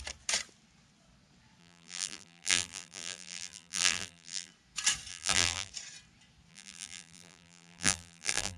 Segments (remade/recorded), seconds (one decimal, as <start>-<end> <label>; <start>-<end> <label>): 0.0-1.6 recorded; 1.6-4.5 remade; 4.5-5.1 recorded; 5.1-5.7 remade; 5.7-6.5 recorded; 6.5-8.6 remade